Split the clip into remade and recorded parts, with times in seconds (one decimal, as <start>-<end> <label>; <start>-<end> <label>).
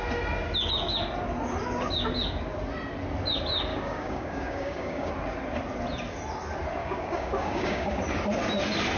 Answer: 0.0-3.7 recorded; 3.7-5.1 remade; 5.1-6.8 recorded; 6.8-8.0 remade; 8.0-9.0 recorded